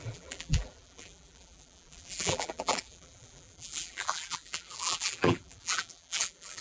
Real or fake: fake